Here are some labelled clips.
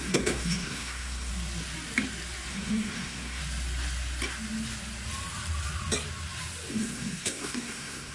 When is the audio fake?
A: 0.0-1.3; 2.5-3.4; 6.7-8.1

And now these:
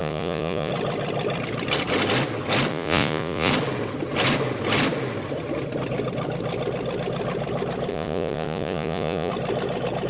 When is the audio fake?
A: 0.0-0.7; 2.7-3.5; 7.9-9.3

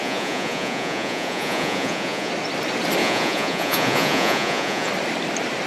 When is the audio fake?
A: 0.0-2.3; 3.0-4.9

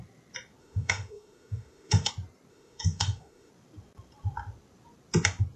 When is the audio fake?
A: 0.6-2.1; 2.5-3.5

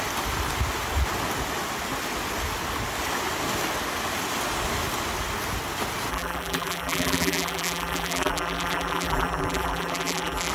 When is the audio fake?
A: 6.1-10.5

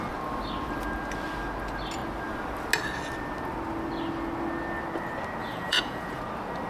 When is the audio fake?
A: 5.4-6.2

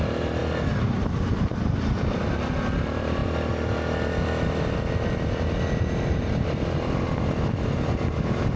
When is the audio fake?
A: 0.0-0.4; 2.3-3.2